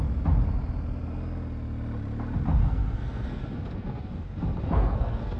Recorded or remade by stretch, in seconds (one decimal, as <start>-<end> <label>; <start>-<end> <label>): 0.0-2.6 recorded; 2.6-5.4 remade